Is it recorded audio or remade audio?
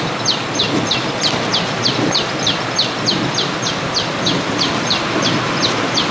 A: recorded